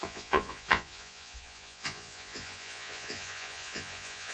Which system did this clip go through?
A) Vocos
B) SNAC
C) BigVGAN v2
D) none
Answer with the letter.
A